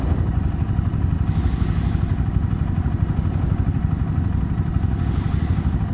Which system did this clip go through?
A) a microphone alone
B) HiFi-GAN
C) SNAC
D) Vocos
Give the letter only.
A